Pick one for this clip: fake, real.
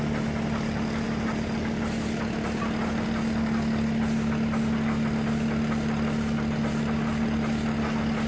real